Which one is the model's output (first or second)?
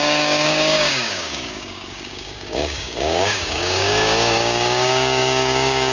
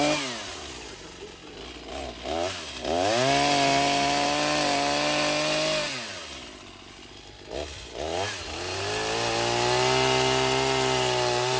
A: first